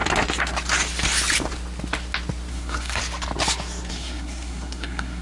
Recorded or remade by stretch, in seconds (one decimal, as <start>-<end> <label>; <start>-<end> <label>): 0.0-2.5 recorded; 2.5-3.0 remade; 3.0-3.9 recorded; 3.9-5.2 remade

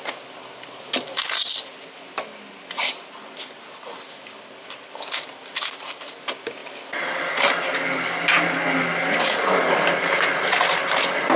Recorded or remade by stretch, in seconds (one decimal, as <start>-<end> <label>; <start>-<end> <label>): 0.0-11.4 recorded

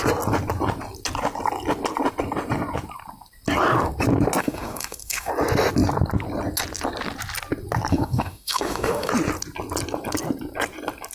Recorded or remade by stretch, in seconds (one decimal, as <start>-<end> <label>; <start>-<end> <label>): 0.0-4.4 recorded; 4.4-5.3 remade; 5.3-7.9 recorded; 7.9-9.1 remade; 9.1-11.1 recorded